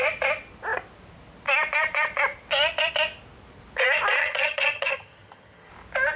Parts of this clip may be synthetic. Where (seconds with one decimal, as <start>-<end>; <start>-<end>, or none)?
4.2-5.7